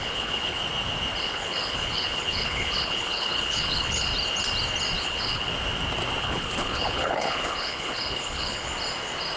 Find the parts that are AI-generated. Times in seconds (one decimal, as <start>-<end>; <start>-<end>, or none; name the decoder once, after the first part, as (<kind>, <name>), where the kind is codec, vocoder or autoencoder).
0.0-0.6 (codec, HILCodec); 1.2-4.1; 5.0-5.5; 6.2-8.7